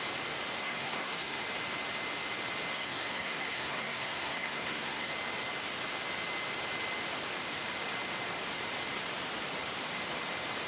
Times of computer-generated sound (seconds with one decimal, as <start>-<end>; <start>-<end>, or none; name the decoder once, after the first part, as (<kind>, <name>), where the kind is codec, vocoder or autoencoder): 0.6-1.4 (codec, SNAC); 2.7-5.1

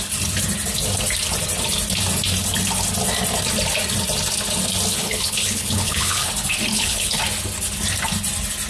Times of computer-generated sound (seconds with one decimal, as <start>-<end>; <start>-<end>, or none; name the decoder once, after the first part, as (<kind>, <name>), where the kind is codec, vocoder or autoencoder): 5.0-6.3 (codec, HILCodec); 6.7-7.2